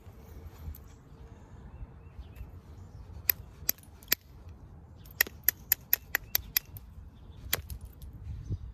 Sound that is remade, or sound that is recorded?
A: recorded